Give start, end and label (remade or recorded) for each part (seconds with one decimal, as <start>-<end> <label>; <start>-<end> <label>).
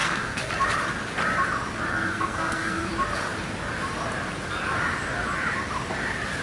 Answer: 0.0-0.5 remade; 0.5-1.9 recorded; 1.9-2.9 remade; 2.9-6.4 recorded